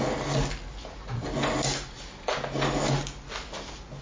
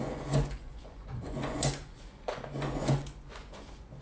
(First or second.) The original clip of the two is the first